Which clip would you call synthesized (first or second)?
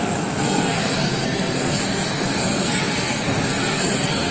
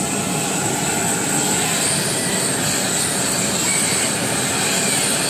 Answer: first